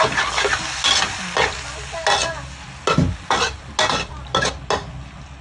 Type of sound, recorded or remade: recorded